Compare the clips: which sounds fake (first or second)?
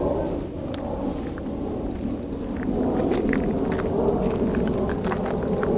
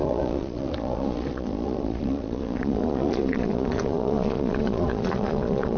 second